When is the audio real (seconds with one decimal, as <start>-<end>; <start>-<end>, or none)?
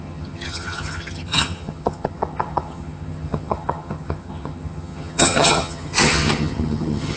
none